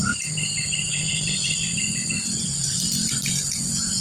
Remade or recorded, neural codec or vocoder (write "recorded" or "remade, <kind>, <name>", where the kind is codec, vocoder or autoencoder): remade, vocoder, BigVGAN v2